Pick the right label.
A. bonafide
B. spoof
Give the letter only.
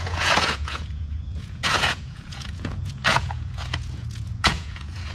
B